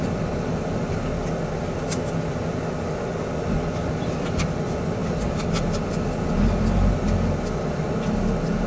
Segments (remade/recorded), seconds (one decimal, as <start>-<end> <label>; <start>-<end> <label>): 0.0-8.7 recorded